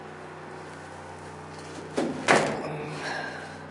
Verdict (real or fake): real